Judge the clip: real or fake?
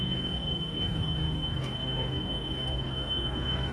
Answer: fake